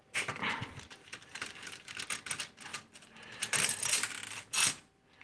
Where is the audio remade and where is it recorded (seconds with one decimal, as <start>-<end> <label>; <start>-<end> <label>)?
0.0-5.2 recorded